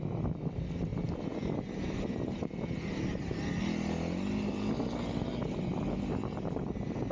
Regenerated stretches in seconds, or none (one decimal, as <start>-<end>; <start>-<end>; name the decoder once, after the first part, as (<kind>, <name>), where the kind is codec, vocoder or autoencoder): none